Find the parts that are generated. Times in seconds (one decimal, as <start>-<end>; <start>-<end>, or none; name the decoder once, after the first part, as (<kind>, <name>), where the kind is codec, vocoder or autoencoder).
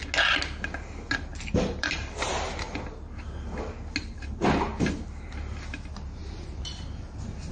1.3-2.5 (vocoder, BigVGAN v2)